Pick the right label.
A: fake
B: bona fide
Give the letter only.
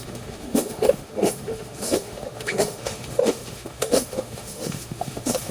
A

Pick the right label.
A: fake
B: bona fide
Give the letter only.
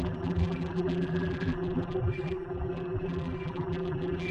A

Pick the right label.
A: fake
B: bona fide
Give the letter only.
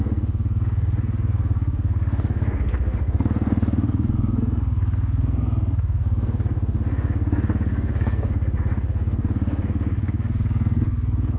A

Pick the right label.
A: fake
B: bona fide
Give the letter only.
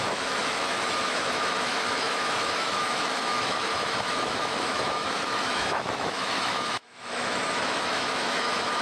A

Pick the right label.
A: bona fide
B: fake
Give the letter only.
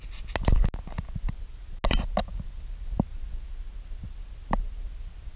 A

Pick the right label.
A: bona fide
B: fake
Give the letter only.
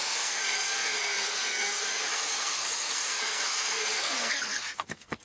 B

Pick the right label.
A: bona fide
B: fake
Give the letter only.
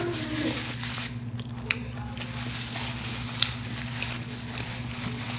A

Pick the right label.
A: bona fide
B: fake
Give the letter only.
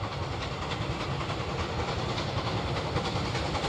A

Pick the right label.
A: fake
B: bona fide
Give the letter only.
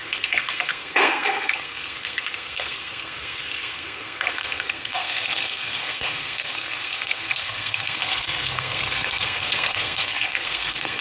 A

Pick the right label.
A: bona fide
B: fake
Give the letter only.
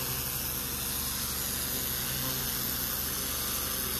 A